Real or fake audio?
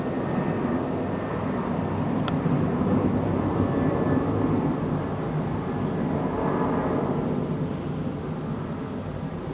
real